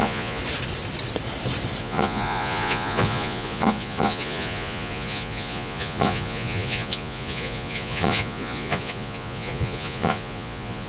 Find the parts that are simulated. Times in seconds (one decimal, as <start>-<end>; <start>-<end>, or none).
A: 0.0-0.4; 1.8-10.9